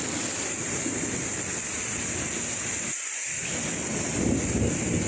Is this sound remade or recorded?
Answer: recorded